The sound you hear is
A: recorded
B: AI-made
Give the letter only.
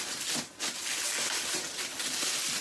A